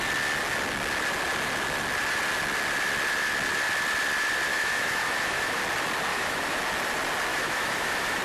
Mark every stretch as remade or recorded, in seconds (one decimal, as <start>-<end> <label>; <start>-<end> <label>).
0.0-4.5 recorded; 4.5-5.6 remade; 5.6-6.1 recorded; 6.1-6.6 remade; 6.6-7.3 recorded; 7.3-8.2 remade